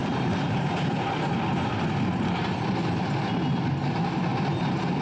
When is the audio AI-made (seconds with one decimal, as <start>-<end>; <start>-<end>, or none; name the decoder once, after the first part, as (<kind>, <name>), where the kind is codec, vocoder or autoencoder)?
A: 0.0-3.0 (vocoder, BigVGAN v2); 4.3-5.0